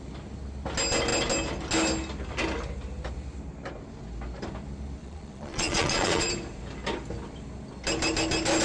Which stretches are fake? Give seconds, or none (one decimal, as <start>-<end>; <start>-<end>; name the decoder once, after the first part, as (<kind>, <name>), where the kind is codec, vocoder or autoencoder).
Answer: 5.0-6.3 (vocoder, Vocos)

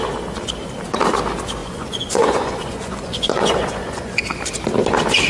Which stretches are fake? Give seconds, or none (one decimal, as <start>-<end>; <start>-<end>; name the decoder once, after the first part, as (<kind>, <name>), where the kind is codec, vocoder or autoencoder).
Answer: 1.6-4.4 (vocoder, Vocos)

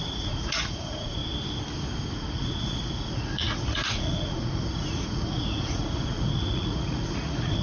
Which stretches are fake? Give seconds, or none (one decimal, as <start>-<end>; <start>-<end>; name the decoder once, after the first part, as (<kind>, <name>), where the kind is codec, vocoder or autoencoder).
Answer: 0.0-1.2 (vocoder, Vocos); 2.1-7.6

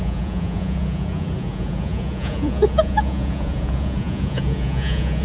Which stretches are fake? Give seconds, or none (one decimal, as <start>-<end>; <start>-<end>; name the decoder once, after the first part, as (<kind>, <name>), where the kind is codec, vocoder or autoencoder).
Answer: 0.0-5.2 (vocoder, Vocos)

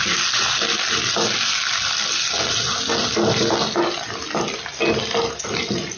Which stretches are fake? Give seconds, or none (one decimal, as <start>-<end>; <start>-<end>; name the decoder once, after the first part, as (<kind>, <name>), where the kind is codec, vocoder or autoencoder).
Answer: none